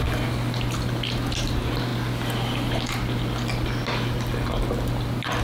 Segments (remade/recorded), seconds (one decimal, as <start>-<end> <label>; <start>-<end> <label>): 0.0-5.4 recorded